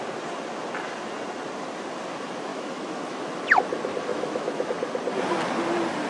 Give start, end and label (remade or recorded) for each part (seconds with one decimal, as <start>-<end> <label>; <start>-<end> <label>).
0.0-2.5 recorded; 2.5-3.3 remade; 3.3-4.1 recorded; 4.1-4.7 remade; 4.7-6.1 recorded